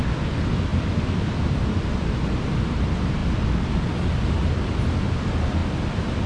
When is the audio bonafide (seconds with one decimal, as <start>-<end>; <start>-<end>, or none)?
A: 0.0-6.3